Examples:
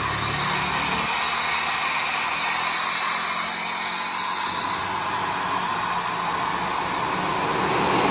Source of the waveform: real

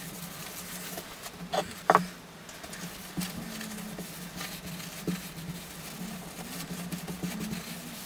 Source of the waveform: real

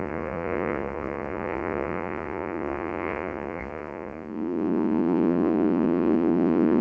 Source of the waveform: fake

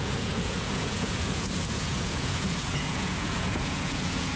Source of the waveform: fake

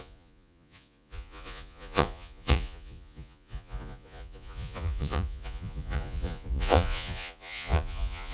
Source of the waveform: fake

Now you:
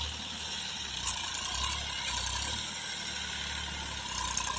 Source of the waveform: real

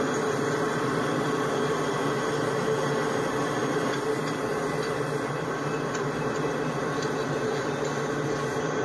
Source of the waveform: real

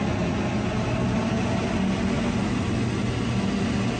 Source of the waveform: real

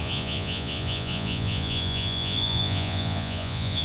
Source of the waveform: fake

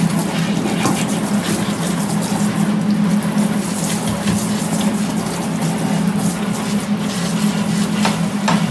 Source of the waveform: real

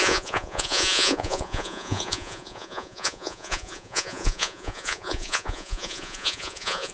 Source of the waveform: fake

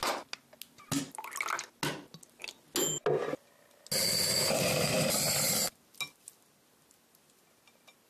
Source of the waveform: real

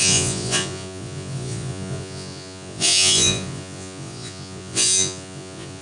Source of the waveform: fake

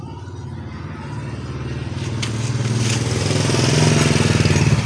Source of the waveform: real